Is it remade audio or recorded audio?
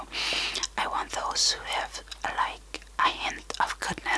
recorded